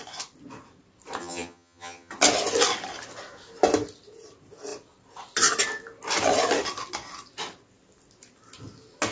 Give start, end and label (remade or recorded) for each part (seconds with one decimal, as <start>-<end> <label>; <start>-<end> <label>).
0.0-1.2 recorded; 1.2-2.1 remade; 2.1-9.1 recorded